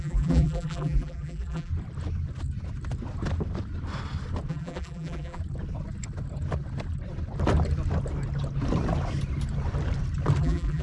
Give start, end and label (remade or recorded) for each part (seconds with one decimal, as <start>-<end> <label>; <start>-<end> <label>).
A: 0.0-1.7 remade; 1.7-4.5 recorded; 4.5-5.4 remade; 5.4-10.4 recorded; 10.4-10.8 remade